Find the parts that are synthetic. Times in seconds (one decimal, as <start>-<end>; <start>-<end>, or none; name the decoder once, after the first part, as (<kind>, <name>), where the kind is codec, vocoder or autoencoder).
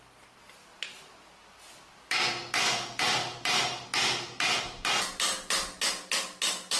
none